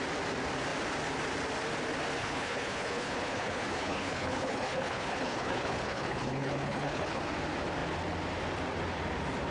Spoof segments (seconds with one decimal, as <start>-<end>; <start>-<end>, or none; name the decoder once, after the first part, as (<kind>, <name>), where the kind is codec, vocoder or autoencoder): 2.2-7.2 (codec, HILCodec)